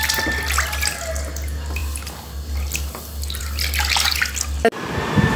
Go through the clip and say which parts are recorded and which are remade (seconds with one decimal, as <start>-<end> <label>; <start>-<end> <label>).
0.0-5.4 recorded